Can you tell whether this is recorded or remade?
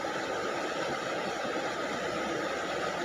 recorded